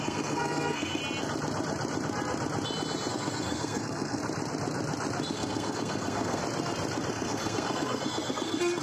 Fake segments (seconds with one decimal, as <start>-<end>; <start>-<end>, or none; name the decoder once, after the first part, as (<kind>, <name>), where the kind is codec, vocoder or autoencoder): 0.0-1.0 (codec, SNAC); 3.1-4.2; 5.3-6.4; 7.1-8.8